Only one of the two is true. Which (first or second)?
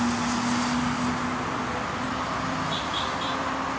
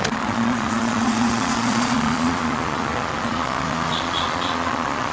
first